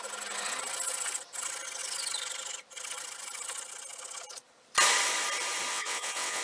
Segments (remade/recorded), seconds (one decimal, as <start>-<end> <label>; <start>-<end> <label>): 0.0-5.7 recorded; 5.7-6.4 remade